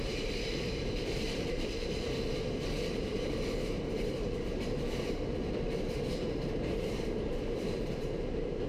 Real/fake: fake